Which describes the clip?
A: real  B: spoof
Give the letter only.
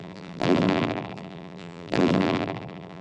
B